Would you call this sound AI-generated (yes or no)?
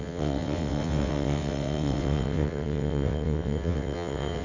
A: yes